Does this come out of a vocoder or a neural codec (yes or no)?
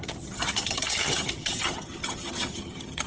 yes